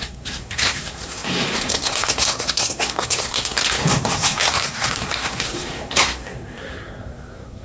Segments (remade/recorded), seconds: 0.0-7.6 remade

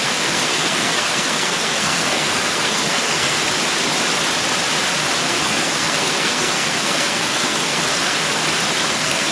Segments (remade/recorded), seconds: 0.0-3.4 remade; 3.4-5.2 recorded; 5.2-8.4 remade; 8.4-8.9 recorded; 8.9-9.3 remade

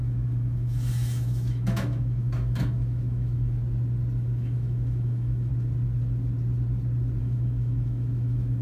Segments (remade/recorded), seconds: 0.0-3.6 remade; 3.6-4.2 recorded; 4.2-5.5 remade; 5.5-7.2 recorded; 7.2-8.6 remade

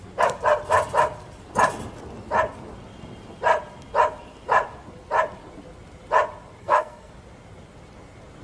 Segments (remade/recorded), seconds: 0.0-6.6 recorded; 6.6-7.1 remade; 7.1-8.4 recorded

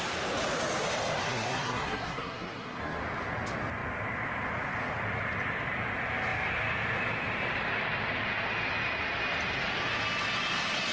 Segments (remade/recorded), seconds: 0.0-1.2 recorded; 1.2-3.0 remade; 3.0-10.9 recorded

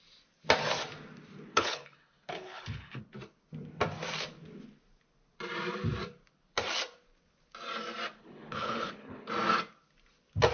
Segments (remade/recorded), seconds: 0.0-1.5 recorded; 1.5-3.0 remade; 3.0-8.2 recorded; 8.2-9.3 remade; 9.3-10.5 recorded

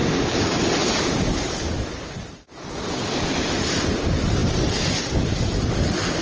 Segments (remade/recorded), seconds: 0.0-6.2 recorded

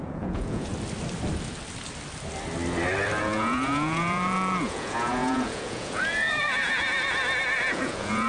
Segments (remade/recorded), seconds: 0.0-0.7 remade; 0.7-3.2 recorded; 3.2-8.3 remade